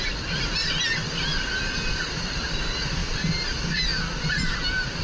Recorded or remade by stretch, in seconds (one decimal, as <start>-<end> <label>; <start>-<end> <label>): 0.0-5.0 recorded